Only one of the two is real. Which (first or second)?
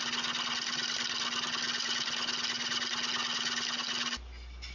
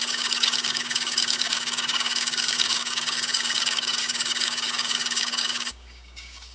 first